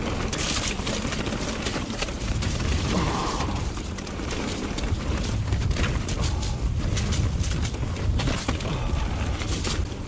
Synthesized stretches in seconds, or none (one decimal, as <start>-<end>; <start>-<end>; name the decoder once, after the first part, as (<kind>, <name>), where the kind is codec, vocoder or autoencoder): 1.7-5.4 (vocoder, BigVGAN v2)